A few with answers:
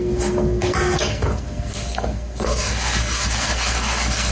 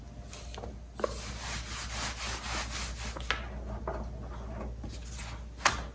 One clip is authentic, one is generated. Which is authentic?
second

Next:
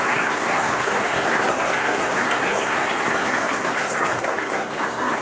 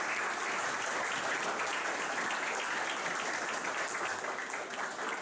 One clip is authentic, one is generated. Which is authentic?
second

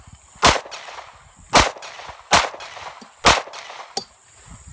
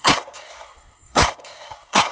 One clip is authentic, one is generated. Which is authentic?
first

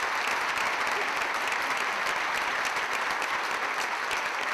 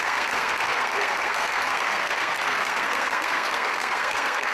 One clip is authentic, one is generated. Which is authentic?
first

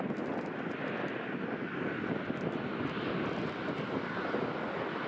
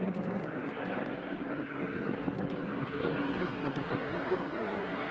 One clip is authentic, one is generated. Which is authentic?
first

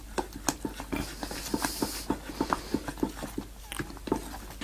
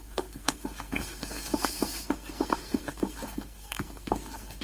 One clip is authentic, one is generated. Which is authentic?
first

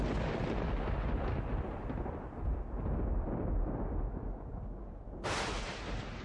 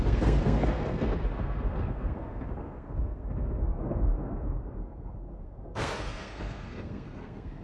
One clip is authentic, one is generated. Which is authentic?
first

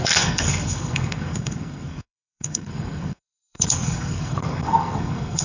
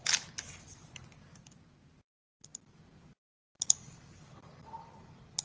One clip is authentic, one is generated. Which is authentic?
second